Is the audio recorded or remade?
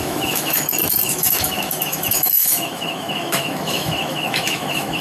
remade